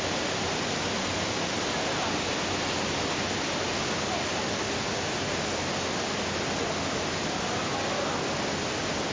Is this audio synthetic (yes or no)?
no